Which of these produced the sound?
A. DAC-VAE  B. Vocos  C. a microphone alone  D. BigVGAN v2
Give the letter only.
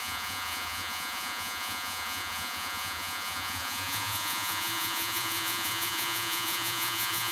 B